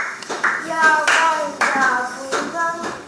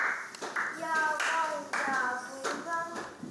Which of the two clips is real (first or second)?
second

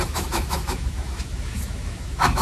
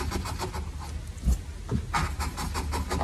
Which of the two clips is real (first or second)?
second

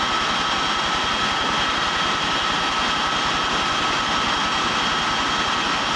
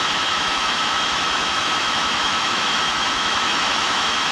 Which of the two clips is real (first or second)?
first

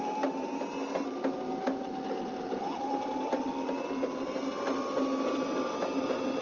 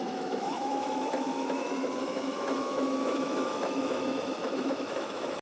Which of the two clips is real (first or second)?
first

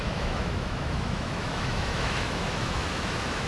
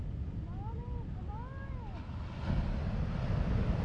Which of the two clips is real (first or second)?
second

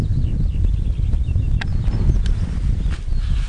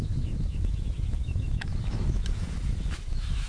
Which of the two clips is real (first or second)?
first